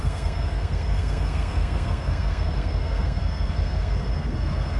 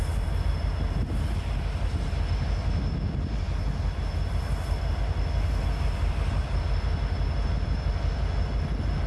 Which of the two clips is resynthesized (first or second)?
first